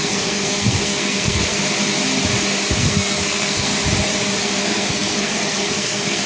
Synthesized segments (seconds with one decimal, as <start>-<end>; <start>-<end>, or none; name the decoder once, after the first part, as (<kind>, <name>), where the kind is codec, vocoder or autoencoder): 0.0-1.6 (codec, SNAC); 2.8-3.7; 4.4-6.3